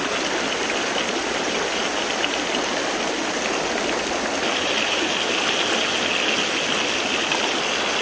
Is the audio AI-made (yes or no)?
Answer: no